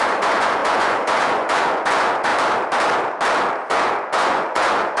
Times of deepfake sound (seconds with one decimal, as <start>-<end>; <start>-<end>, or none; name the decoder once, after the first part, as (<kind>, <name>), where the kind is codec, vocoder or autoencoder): 0.0-2.3 (vocoder, Vocos); 3.7-5.0